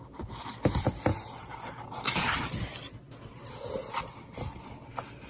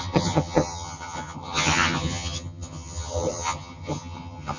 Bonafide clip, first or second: first